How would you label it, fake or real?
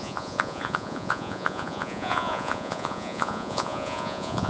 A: fake